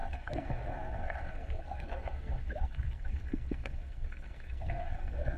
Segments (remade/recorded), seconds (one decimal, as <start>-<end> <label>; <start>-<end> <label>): 0.0-5.4 remade